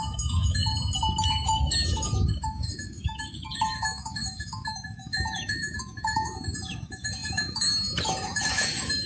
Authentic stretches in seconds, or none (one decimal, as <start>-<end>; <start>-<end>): 0.6-1.2